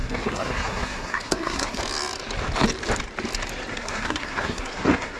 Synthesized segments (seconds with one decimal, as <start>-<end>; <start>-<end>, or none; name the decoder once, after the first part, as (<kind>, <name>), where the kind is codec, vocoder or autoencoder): 0.0-1.8 (codec, SNAC); 3.7-5.2